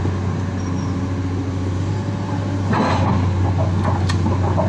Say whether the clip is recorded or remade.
recorded